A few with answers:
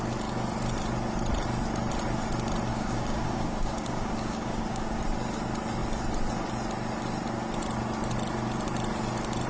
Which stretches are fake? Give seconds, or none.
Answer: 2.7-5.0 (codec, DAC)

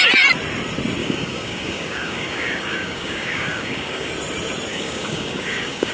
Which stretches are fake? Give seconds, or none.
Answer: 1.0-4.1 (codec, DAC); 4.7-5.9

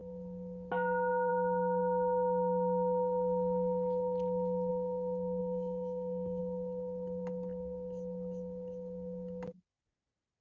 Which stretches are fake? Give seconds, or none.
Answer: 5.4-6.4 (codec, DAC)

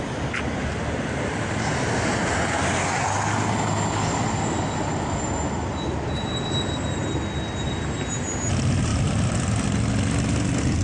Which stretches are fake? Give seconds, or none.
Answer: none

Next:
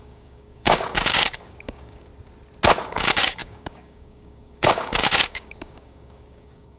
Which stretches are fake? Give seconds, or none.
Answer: 0.0-2.1 (codec, DAC); 2.8-6.8